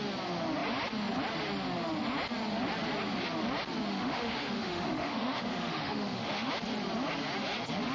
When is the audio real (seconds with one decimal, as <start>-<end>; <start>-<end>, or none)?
0.0-3.9; 6.5-7.9